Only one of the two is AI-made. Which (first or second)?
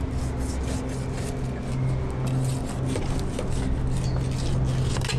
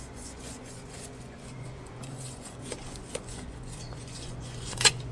second